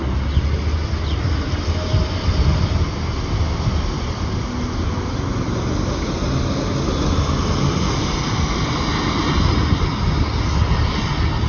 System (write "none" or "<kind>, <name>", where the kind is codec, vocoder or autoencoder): none